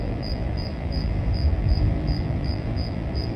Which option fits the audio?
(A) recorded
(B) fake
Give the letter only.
B